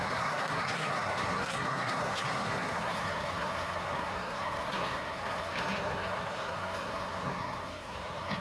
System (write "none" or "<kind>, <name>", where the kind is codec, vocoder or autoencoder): codec, SNAC